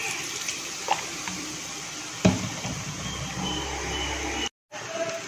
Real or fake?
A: real